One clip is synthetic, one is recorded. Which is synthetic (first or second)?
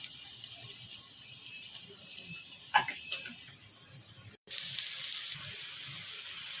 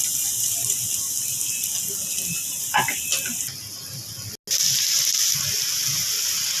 first